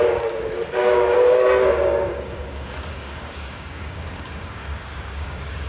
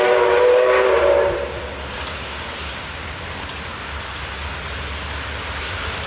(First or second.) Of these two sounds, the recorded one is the second